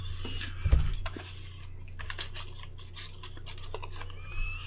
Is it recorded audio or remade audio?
recorded